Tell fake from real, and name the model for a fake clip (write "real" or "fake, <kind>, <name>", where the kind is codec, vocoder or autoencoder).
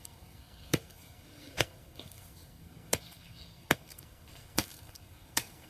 fake, codec, SNAC